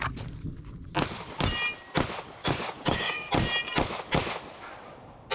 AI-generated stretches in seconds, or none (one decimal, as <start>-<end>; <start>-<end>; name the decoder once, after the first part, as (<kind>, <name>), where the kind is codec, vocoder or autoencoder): 2.4-3.3 (codec, DAC)